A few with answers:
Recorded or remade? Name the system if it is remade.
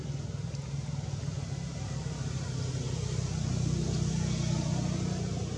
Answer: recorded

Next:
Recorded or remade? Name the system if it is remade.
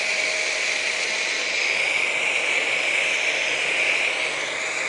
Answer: recorded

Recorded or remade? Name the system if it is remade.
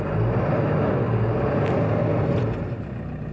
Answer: recorded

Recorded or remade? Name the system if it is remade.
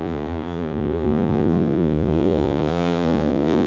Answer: remade, vocoder, Vocos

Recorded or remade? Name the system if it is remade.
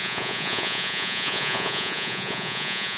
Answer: remade, vocoder, Vocos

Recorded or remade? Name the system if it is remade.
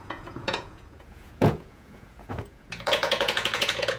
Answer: remade, vocoder, Vocos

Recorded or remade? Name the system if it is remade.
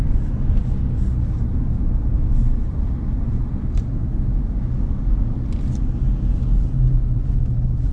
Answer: recorded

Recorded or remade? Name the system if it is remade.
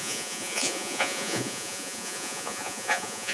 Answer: remade, vocoder, Vocos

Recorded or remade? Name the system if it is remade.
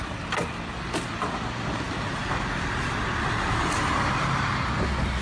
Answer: recorded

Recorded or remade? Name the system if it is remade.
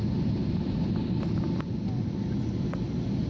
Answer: recorded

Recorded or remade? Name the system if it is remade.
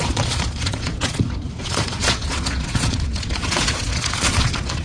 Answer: remade, vocoder, Vocos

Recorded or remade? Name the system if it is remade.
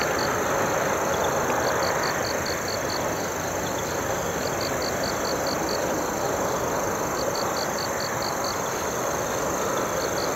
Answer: recorded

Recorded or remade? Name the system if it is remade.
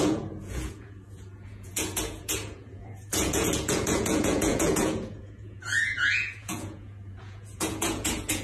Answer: remade, vocoder, Vocos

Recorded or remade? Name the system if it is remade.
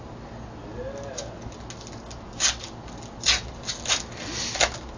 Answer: recorded